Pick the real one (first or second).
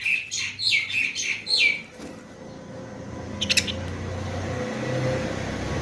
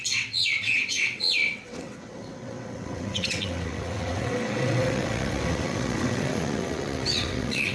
first